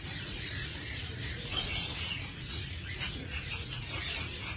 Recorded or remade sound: remade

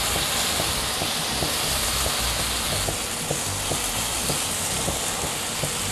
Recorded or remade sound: recorded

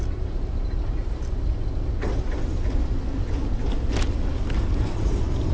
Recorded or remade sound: recorded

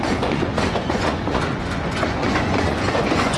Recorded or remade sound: remade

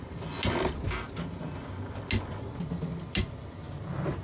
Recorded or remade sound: recorded